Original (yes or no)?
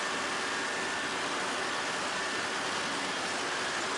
yes